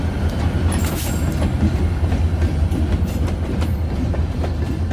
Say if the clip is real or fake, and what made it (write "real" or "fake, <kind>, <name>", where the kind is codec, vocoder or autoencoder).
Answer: real